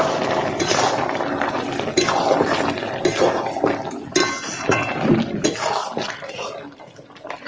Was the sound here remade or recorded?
recorded